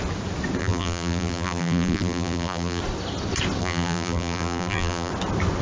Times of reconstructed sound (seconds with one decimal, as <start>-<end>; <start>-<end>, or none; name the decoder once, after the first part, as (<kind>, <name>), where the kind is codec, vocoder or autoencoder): 0.6-2.8 (vocoder, BigVGAN v2); 3.6-5.1